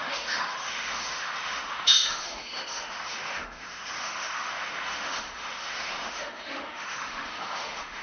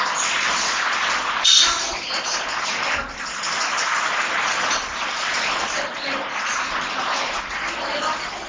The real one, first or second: second